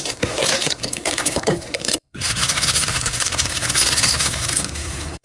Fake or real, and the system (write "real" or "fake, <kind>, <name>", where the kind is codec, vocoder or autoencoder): fake, codec, SNAC